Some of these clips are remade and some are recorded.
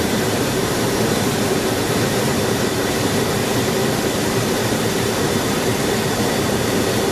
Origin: remade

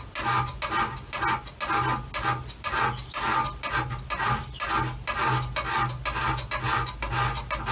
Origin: recorded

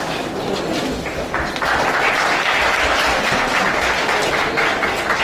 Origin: recorded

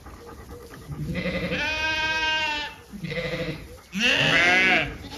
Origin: recorded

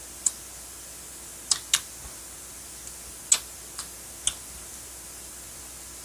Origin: recorded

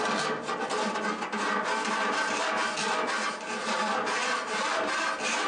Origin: recorded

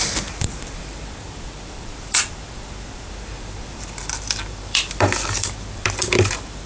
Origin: remade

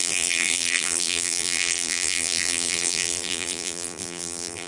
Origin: remade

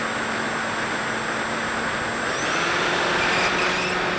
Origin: recorded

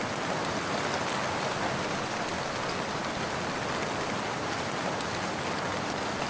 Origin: recorded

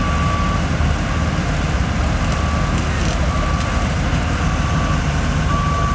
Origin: recorded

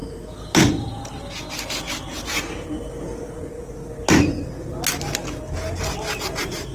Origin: recorded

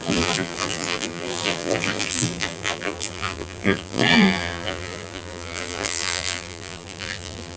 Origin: remade